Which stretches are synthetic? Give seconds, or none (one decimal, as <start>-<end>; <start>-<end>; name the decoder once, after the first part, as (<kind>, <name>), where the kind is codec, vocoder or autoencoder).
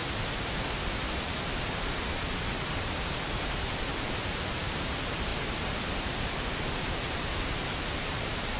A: 1.1-5.3 (vocoder, BigVGAN v2); 6.1-8.6